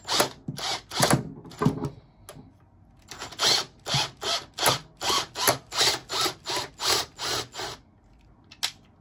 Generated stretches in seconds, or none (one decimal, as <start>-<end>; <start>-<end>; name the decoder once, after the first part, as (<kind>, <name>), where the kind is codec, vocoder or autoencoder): none